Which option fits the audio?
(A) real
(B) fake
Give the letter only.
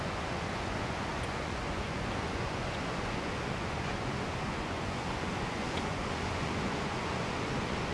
B